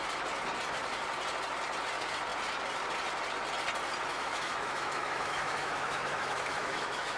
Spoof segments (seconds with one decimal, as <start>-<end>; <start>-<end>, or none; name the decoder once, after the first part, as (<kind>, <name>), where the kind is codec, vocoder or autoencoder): 4.1-7.2 (autoencoder, DAC-VAE)